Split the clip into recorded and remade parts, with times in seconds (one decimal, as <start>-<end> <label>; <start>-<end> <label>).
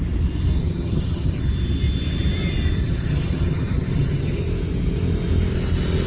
0.0-0.6 recorded; 0.6-1.4 remade; 1.4-2.8 recorded; 2.8-4.4 remade; 4.4-6.1 recorded